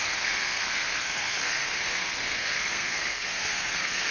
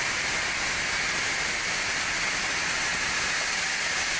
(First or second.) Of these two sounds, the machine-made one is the first